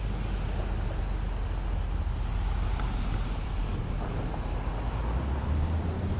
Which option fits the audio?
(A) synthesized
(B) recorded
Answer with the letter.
B